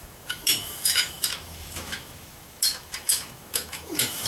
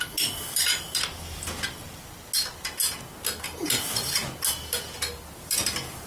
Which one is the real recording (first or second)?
second